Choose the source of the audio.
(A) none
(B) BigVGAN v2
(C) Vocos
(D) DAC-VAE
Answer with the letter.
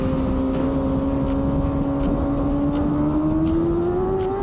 A